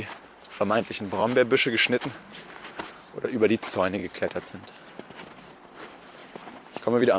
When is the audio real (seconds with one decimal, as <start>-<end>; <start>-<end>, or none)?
0.0-1.2; 2.3-4.0; 5.5-6.2